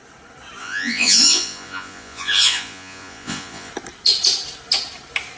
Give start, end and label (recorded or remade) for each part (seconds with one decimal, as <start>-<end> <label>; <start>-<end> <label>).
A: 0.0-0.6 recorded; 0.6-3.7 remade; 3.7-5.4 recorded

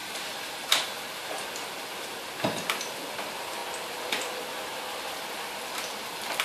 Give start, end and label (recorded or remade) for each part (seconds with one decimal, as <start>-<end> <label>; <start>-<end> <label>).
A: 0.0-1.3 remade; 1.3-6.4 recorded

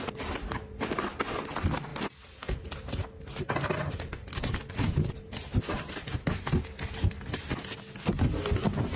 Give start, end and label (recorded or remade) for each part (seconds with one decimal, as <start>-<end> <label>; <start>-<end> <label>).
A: 0.0-9.0 recorded